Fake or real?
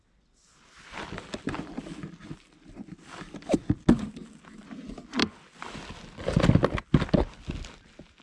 real